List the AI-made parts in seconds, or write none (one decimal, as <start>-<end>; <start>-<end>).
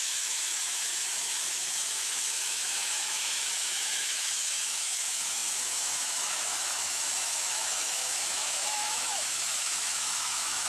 0.0-10.7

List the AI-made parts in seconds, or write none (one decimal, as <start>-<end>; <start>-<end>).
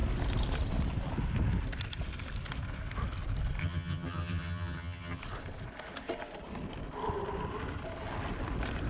3.6-5.2